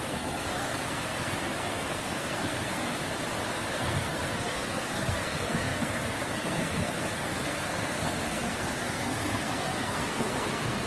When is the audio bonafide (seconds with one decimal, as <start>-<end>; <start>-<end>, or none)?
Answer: 3.0-3.7